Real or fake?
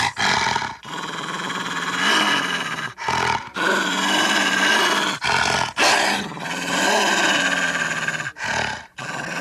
real